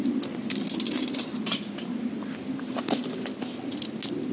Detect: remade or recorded recorded